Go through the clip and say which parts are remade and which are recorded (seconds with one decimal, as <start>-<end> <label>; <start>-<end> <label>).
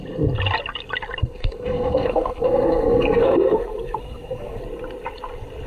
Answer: 0.0-1.2 recorded; 1.2-4.6 remade; 4.6-5.7 recorded